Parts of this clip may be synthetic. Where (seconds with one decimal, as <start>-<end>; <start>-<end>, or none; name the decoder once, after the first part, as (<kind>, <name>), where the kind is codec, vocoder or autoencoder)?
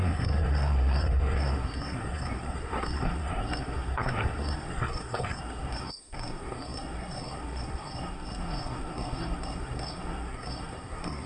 0.0-11.3 (codec, SNAC)